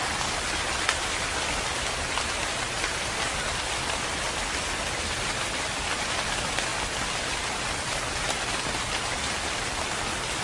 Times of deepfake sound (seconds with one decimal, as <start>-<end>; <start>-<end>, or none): none